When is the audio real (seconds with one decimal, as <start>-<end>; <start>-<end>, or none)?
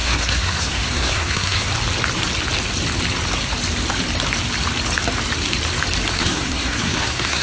1.7-6.1